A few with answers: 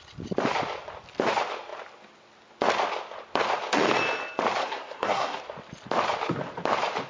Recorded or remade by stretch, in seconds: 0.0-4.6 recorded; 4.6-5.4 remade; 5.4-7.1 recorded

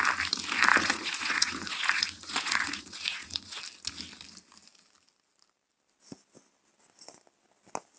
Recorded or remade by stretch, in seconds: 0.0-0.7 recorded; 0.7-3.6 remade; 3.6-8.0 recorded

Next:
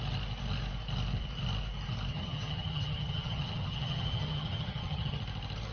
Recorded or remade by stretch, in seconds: 0.0-2.1 recorded; 2.1-5.2 remade; 5.2-5.7 recorded

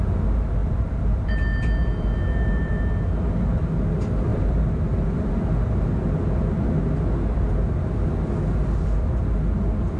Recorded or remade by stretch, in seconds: 0.0-0.6 recorded; 0.6-2.8 remade; 2.8-4.3 recorded; 4.3-5.3 remade; 5.3-10.0 recorded

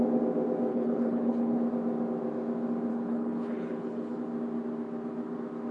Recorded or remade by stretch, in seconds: 0.0-0.7 recorded; 0.7-1.6 remade; 1.6-2.9 recorded; 2.9-4.2 remade; 4.2-5.7 recorded

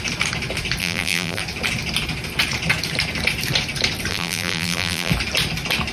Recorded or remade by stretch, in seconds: 0.0-0.8 recorded; 0.8-1.4 remade; 1.4-4.1 recorded; 4.1-5.1 remade; 5.1-5.9 recorded